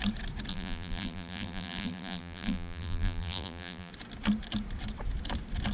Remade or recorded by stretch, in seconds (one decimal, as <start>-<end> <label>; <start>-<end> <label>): 0.0-0.5 recorded; 0.5-3.9 remade; 3.9-5.7 recorded